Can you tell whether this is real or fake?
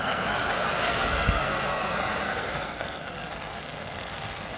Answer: fake